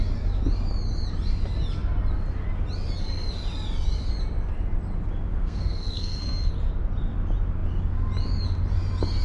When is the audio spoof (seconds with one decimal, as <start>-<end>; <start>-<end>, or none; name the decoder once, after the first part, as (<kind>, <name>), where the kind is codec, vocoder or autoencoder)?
5.3-6.5 (codec, SNAC)